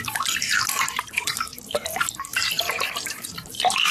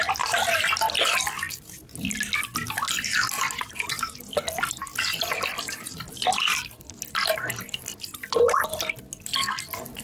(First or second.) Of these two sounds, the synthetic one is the first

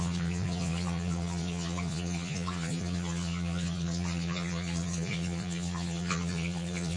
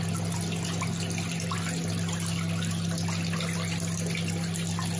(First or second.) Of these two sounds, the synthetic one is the first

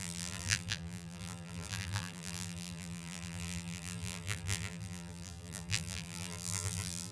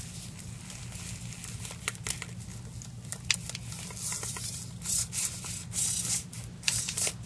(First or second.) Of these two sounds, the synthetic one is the first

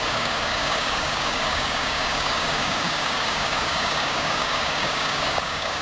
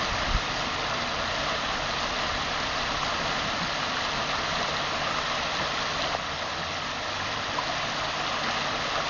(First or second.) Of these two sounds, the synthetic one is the first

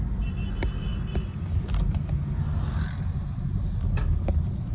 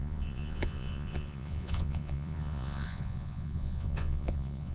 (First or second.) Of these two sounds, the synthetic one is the second